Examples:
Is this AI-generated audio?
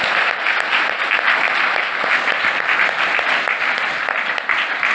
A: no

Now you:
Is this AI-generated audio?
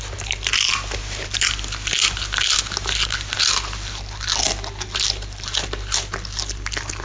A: no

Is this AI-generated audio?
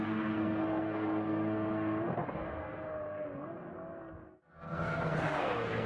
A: yes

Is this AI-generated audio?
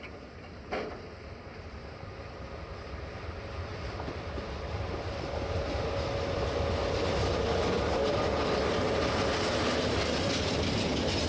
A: no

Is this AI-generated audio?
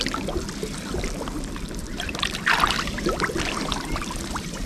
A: yes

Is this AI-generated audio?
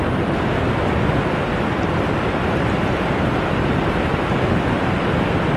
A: no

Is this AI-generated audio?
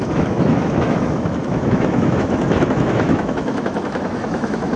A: yes